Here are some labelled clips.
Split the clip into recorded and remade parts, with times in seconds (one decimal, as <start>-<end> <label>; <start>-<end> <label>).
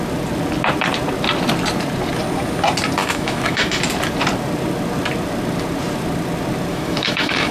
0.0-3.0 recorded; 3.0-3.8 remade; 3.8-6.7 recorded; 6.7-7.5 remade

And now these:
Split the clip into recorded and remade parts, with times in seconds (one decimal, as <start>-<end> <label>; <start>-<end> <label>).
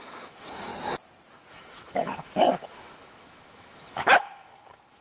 0.0-0.7 remade; 0.7-1.5 recorded; 1.5-5.0 remade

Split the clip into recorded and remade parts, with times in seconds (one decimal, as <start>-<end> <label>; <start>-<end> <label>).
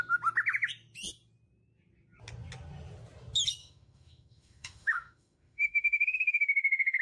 0.0-3.6 recorded; 3.6-7.0 remade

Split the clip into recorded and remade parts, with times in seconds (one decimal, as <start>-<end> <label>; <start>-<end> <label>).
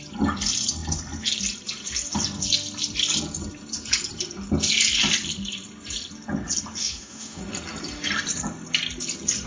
0.0-6.8 recorded; 6.8-7.4 remade; 7.4-9.5 recorded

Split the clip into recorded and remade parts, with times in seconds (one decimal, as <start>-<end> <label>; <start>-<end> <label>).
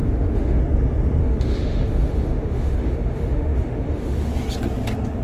0.0-0.6 remade; 0.6-1.2 recorded; 1.2-4.3 remade; 4.3-5.2 recorded